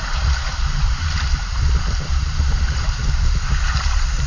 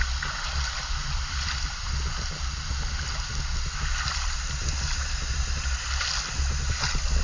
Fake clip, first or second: first